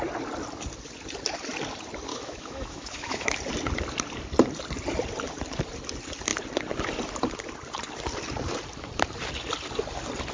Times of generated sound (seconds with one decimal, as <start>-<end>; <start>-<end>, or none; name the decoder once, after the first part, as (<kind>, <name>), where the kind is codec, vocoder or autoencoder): 2.1-3.4 (autoencoder, DAC-VAE)